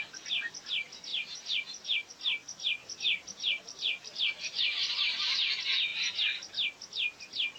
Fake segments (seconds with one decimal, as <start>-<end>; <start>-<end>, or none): 1.1-2.1; 2.8-5.5